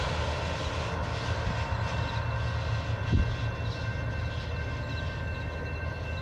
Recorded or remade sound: recorded